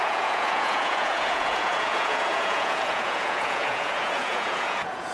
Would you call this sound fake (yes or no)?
yes